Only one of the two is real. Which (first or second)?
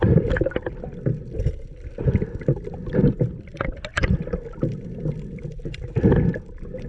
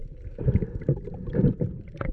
first